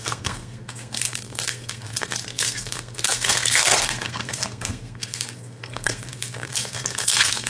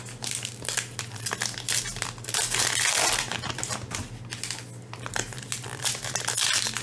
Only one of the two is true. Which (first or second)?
second